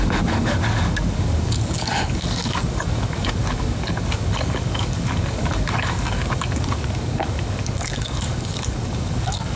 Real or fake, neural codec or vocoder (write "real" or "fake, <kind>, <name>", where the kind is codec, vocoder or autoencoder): fake, codec, DAC